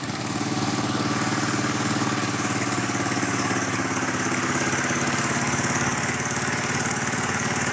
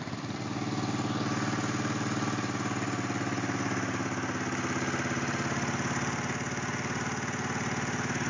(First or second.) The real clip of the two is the second